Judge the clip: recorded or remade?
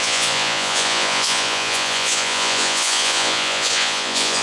remade